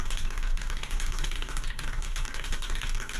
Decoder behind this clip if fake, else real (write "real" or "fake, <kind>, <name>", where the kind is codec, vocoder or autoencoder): fake, codec, DAC